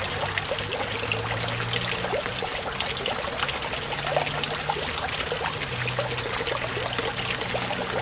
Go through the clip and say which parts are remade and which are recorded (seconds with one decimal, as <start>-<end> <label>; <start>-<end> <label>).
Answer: 0.0-8.0 recorded